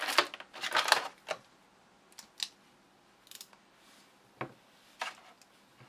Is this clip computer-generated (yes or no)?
no